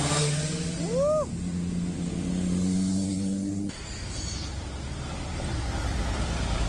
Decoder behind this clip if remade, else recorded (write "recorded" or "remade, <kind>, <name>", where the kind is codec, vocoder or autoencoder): recorded